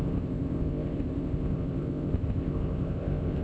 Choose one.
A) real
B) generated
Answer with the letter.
B